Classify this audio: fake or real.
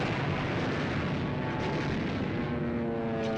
real